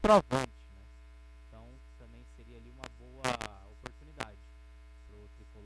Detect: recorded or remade recorded